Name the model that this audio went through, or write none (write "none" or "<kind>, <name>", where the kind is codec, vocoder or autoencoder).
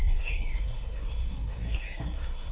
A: codec, SNAC